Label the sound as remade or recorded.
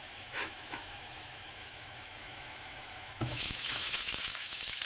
remade